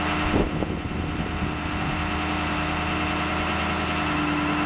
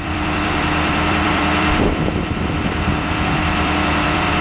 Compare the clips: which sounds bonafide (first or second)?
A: first